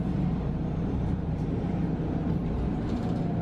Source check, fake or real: fake